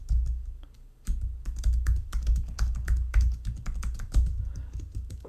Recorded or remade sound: remade